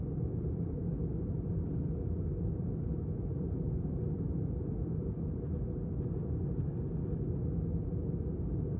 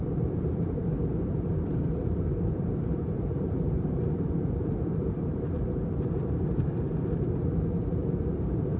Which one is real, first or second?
first